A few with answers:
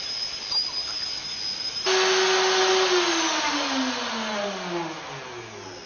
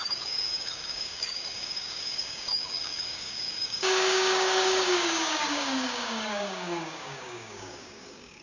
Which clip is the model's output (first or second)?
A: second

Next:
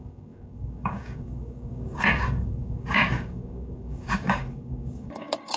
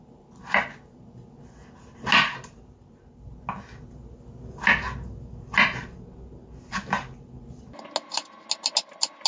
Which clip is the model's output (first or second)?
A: first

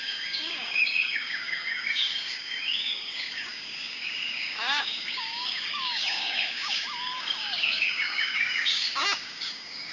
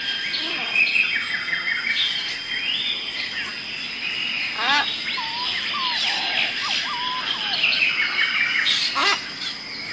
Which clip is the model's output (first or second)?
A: first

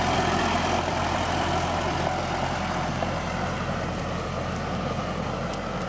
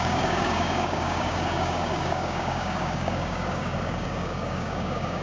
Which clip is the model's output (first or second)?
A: second